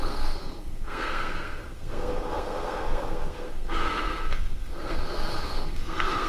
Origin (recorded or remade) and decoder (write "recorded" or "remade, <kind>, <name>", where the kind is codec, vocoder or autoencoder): remade, codec, SNAC